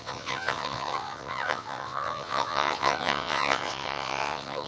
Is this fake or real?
fake